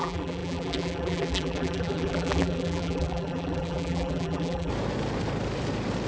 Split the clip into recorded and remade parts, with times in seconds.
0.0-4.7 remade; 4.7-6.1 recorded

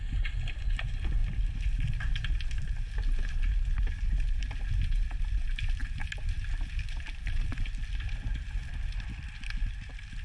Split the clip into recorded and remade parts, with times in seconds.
0.0-5.8 recorded; 5.8-7.6 remade; 7.6-10.2 recorded

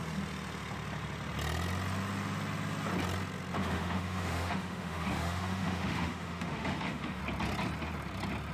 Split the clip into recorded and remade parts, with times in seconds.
0.0-3.6 recorded; 3.6-7.2 remade; 7.2-8.5 recorded

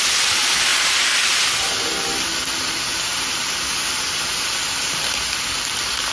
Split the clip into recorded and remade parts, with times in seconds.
0.0-6.1 recorded